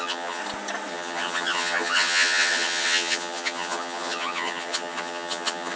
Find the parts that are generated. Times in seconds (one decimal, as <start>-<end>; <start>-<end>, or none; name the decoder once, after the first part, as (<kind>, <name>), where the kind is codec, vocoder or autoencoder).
0.0-0.4 (vocoder, HiFi-GAN); 0.9-5.8